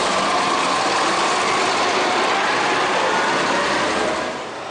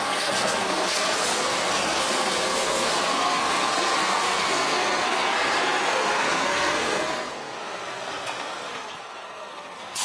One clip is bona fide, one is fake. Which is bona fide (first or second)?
first